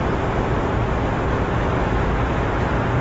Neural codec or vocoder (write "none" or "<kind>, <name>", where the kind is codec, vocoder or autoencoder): none